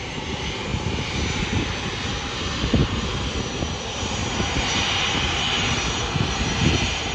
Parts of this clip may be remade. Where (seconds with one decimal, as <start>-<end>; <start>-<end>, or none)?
none